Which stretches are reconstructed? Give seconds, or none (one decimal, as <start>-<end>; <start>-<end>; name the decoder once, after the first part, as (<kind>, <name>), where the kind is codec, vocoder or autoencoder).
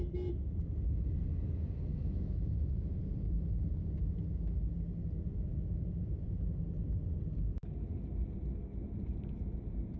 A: 1.9-3.0 (autoencoder, DAC-VAE)